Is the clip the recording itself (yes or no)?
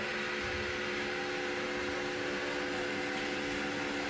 yes